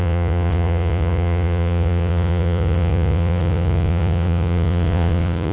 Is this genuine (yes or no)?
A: no